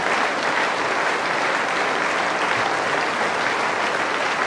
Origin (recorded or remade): recorded